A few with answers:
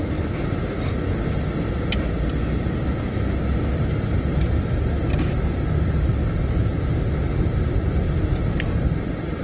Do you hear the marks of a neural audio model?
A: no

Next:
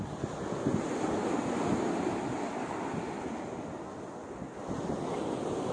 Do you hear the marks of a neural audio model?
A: no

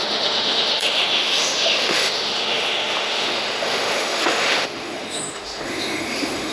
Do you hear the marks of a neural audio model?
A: yes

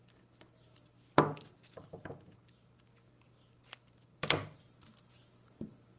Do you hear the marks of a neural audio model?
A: no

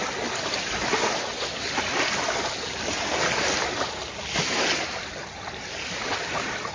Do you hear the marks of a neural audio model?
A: no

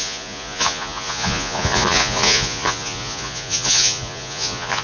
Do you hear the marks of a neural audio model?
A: yes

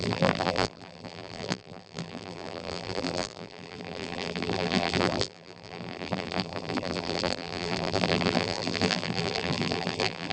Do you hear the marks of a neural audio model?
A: yes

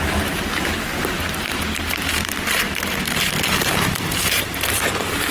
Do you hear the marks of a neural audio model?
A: yes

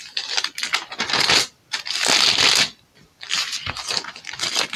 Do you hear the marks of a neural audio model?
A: no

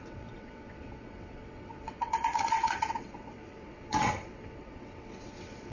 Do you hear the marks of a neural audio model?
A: yes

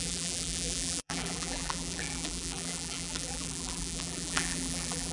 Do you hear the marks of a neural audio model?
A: yes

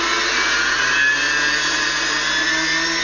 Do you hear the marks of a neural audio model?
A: no